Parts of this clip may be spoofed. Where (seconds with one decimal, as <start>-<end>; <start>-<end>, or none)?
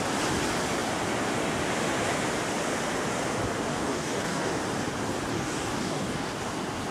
3.7-4.5; 5.3-6.4